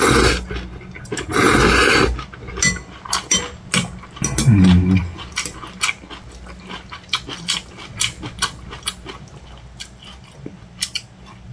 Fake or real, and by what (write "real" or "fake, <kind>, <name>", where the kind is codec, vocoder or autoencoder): real